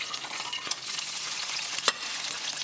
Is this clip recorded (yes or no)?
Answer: no